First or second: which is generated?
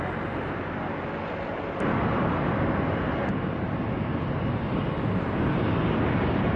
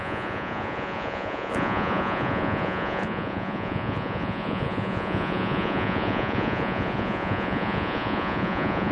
second